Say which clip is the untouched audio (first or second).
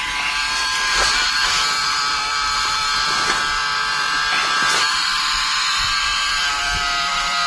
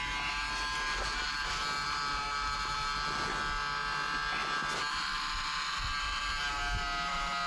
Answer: second